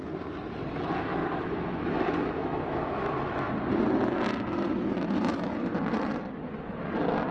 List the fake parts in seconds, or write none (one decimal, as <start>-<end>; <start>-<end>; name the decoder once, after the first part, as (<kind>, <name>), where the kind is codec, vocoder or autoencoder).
1.2-3.5 (autoencoder, DAC-VAE)